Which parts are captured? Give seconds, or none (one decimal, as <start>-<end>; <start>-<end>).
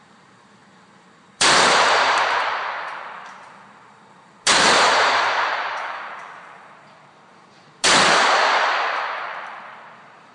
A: none